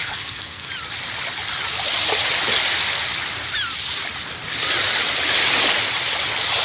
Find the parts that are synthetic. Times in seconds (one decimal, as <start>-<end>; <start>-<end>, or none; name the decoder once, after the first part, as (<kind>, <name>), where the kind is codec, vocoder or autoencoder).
0.0-0.7 (codec, SNAC)